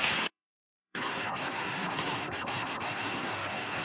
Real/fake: fake